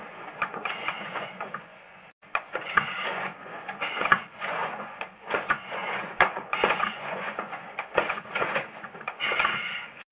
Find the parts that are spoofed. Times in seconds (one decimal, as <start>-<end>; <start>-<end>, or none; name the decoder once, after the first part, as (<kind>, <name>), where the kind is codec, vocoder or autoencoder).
0.0-10.1 (vocoder, Vocos)